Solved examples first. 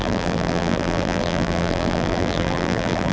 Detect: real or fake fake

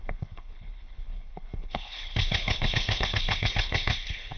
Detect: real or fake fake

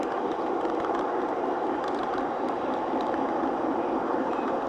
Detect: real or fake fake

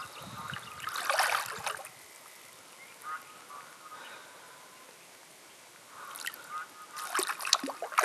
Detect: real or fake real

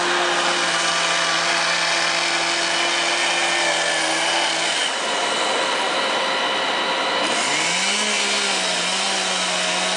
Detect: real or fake real